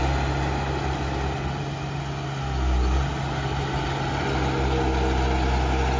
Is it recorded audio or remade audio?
recorded